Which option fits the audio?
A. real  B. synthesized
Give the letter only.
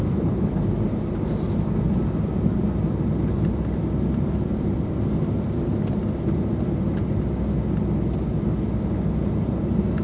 A